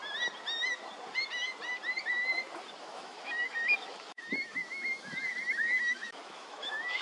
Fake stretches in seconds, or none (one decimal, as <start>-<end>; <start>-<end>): 2.8-7.0